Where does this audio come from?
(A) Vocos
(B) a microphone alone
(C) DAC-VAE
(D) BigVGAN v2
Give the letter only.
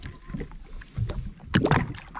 B